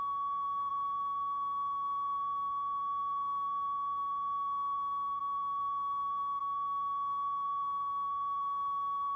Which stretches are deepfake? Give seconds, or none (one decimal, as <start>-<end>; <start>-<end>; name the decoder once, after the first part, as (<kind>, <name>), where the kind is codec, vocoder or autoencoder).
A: none